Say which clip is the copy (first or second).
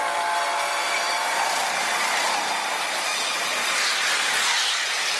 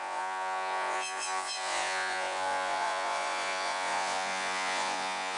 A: second